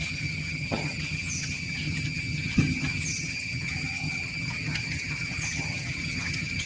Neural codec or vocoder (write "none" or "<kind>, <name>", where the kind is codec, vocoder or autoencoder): vocoder, HiFi-GAN